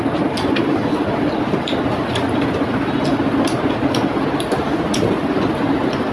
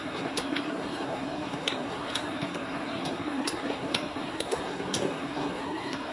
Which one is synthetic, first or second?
second